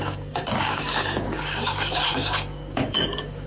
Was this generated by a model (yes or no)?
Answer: yes